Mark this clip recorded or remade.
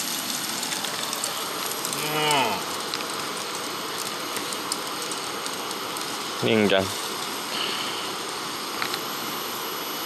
recorded